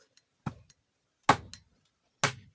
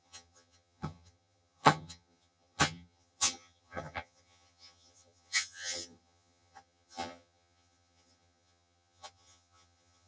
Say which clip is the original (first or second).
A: first